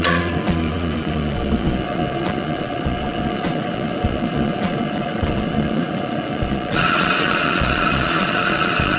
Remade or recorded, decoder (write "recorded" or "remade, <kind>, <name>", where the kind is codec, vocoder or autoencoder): remade, vocoder, Vocos